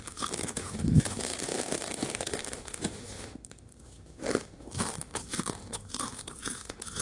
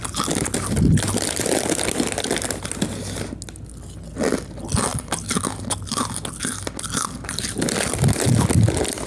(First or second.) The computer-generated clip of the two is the first